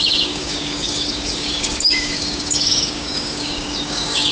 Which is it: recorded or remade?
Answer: remade